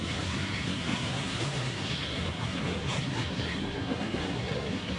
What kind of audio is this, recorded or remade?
remade